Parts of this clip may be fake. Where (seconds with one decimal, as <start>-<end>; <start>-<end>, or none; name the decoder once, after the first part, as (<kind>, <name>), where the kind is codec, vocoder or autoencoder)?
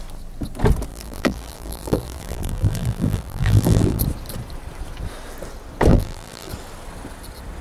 0.9-4.0 (vocoder, BigVGAN v2); 5.9-6.5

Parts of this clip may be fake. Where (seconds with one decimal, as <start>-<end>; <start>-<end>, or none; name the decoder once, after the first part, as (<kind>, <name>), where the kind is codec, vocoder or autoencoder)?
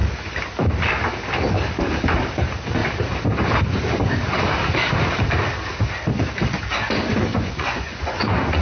7.3-8.6 (vocoder, Vocos)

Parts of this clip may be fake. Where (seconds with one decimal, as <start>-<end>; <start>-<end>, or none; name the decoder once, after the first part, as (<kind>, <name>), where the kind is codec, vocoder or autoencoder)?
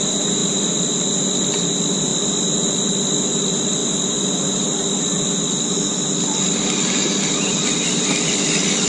none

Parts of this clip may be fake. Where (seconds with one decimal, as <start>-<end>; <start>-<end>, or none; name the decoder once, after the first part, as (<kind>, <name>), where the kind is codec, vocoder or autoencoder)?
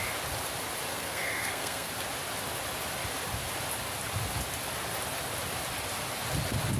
0.9-1.9 (codec, SNAC)